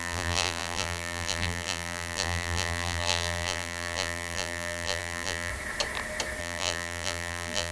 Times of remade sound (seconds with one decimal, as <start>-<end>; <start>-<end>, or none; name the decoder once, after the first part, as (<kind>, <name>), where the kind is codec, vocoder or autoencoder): 0.0-5.5 (vocoder, BigVGAN v2); 6.4-7.7